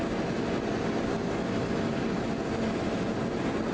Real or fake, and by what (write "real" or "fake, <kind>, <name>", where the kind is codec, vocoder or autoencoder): real